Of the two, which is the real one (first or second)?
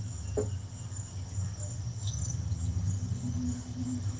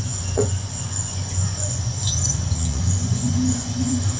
first